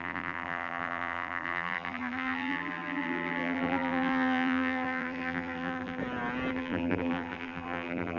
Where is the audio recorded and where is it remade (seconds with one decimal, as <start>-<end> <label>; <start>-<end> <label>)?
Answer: 0.0-6.0 remade; 6.0-6.5 recorded; 6.5-8.2 remade